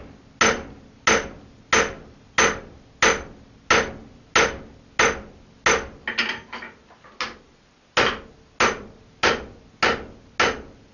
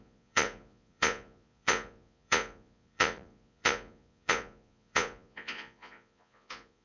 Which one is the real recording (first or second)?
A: first